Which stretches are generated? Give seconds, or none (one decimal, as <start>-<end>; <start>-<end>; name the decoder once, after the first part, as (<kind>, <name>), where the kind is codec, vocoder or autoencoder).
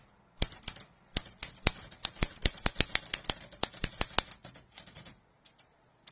none